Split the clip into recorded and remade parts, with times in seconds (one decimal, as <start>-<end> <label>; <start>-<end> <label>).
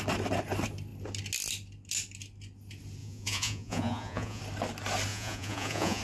0.0-3.0 recorded; 3.0-4.4 remade; 4.4-5.1 recorded; 5.1-6.0 remade